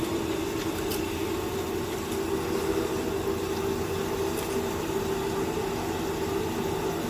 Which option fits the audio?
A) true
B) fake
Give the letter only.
A